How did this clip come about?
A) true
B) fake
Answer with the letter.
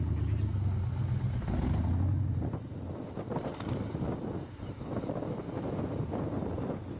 A